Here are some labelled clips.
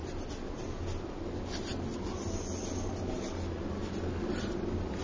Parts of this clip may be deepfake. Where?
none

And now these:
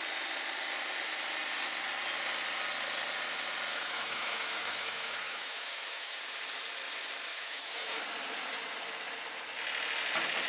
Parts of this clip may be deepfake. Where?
3.7-6.2; 7.3-8.0

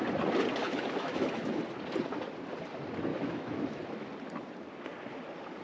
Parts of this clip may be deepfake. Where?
0.6-1.6; 3.1-4.1